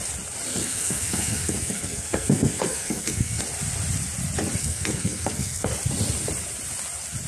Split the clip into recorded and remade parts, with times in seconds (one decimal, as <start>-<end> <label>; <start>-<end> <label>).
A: 0.0-0.5 recorded; 0.5-3.4 remade; 3.4-4.6 recorded; 4.6-5.7 remade; 5.7-7.3 recorded